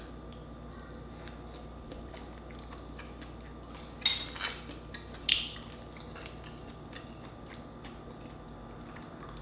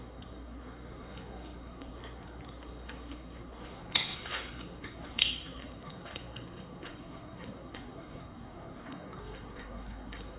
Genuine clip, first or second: first